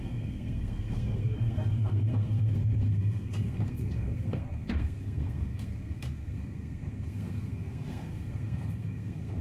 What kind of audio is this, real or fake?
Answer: fake